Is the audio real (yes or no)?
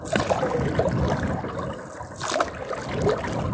yes